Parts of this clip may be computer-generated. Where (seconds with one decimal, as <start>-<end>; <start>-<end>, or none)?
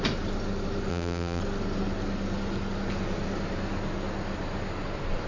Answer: 0.9-1.4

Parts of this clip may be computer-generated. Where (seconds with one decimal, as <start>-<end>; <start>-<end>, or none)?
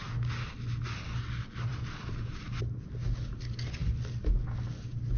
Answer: 1.7-2.6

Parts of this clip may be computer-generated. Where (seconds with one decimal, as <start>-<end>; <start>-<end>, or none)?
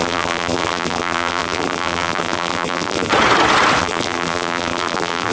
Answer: 0.0-3.1; 3.8-5.3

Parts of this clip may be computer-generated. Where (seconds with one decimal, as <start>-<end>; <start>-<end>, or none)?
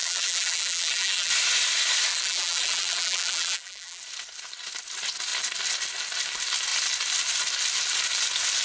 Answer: 0.0-1.3; 2.1-4.0